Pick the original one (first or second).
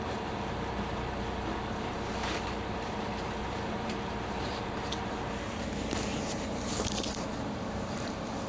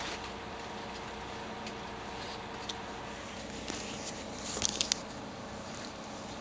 second